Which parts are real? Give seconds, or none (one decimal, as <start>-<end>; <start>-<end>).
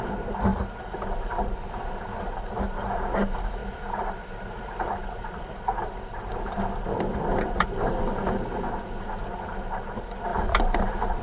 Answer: 0.0-3.6; 8.0-10.3